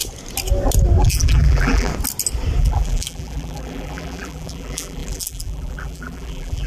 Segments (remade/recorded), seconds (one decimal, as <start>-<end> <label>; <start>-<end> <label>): 0.0-1.0 recorded; 1.0-1.9 remade; 1.9-2.6 recorded; 2.6-6.7 remade